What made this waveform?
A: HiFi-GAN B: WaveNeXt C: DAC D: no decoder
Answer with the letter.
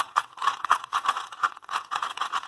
B